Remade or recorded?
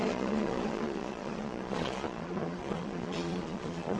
remade